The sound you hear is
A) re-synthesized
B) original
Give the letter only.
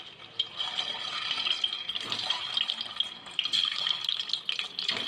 B